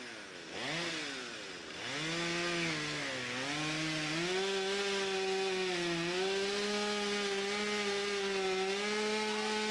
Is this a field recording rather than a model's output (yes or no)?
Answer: yes